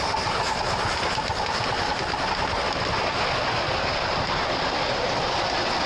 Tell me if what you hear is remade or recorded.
recorded